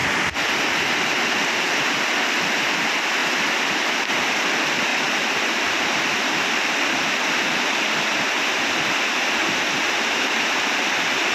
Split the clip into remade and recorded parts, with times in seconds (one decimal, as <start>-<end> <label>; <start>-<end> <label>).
0.0-0.7 remade; 0.7-3.2 recorded; 3.2-4.3 remade; 4.3-4.9 recorded; 4.9-7.2 remade; 7.2-11.3 recorded